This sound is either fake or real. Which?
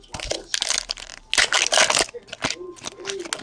real